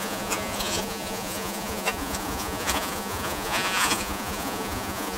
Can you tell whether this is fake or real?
fake